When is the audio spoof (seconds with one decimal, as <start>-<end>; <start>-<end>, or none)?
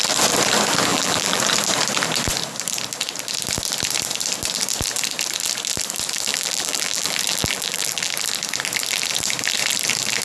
0.9-1.4; 6.3-8.1